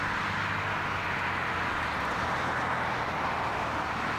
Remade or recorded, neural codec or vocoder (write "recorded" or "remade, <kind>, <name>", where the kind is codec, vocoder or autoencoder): recorded